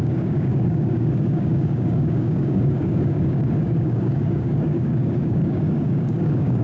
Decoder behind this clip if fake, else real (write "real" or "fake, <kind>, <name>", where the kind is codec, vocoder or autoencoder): fake, codec, DAC